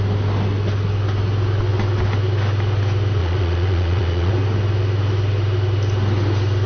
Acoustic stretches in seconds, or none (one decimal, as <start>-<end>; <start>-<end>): 0.0-3.2; 4.3-6.7